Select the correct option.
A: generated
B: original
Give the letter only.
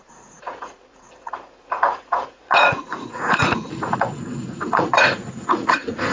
A